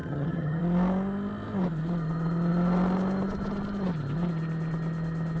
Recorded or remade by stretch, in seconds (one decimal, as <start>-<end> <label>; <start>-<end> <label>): 0.0-0.6 remade; 0.6-5.4 recorded

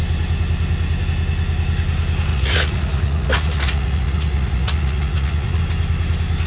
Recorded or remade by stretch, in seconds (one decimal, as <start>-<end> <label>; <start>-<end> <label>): 0.0-2.3 recorded; 2.3-5.6 remade; 5.6-6.5 recorded